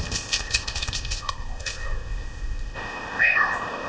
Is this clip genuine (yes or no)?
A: no